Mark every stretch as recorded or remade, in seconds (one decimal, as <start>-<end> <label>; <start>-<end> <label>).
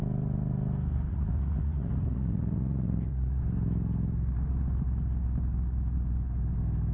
0.0-1.1 recorded; 1.1-3.4 remade; 3.4-6.9 recorded